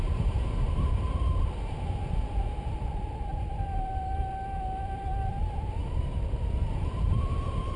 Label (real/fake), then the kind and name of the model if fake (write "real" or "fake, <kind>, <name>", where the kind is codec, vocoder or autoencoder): real